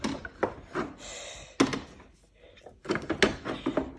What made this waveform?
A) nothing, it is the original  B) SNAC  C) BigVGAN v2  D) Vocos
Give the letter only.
A